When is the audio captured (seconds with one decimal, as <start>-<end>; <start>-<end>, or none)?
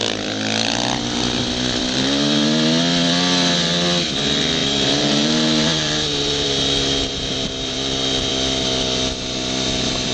0.0-4.6; 8.3-10.1